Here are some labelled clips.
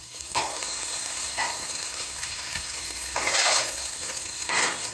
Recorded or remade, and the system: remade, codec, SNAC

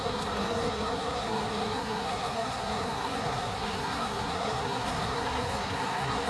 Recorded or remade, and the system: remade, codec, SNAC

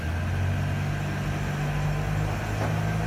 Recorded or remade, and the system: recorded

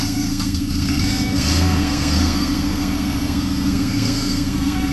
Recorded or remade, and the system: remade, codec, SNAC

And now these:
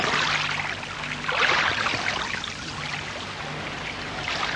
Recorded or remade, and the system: recorded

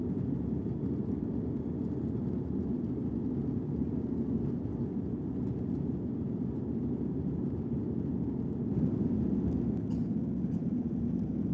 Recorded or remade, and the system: recorded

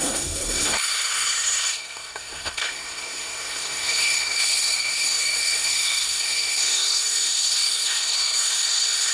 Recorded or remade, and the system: remade, codec, SNAC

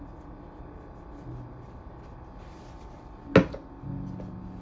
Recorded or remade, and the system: recorded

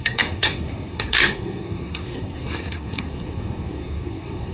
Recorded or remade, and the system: remade, codec, SNAC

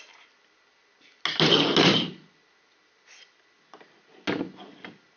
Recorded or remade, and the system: recorded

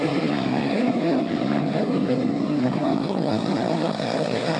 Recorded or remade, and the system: remade, codec, SNAC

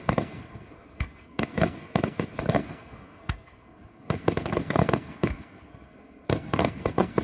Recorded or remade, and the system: remade, codec, SNAC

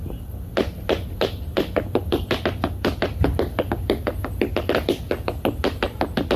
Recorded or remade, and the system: recorded